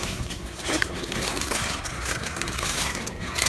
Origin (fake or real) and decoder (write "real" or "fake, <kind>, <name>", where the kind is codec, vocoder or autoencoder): fake, codec, SNAC